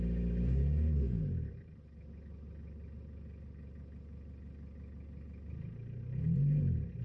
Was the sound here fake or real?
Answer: real